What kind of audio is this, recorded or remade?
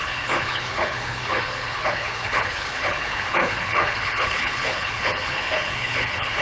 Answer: remade